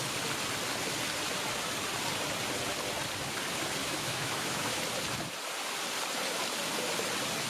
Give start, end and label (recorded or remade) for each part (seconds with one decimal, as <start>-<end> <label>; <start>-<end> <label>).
0.0-3.8 recorded; 3.8-4.8 remade; 4.8-7.5 recorded